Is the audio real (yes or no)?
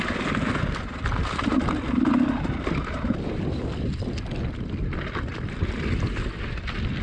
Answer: yes